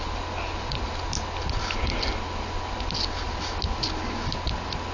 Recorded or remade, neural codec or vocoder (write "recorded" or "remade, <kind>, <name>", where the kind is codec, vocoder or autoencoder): recorded